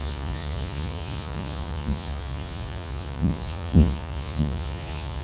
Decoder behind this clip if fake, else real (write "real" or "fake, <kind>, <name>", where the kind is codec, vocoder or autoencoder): fake, vocoder, Vocos